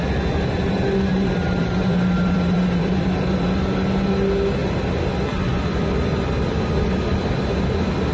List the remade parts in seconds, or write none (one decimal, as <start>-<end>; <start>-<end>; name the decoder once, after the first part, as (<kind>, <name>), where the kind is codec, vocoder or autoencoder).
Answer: 1.1-3.0 (vocoder, BigVGAN v2)